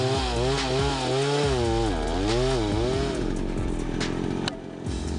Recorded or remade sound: recorded